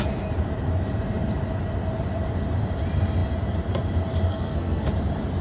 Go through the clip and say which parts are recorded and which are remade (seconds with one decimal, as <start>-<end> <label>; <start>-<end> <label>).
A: 0.0-4.3 recorded; 4.3-4.9 remade; 4.9-5.4 recorded